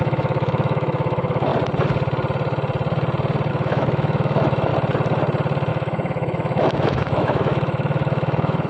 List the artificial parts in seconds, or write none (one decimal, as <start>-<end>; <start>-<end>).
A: 0.0-1.5; 3.5-4.7; 5.7-8.7

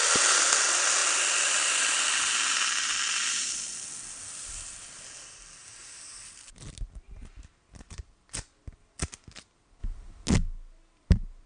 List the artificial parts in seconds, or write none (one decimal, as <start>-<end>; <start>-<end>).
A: none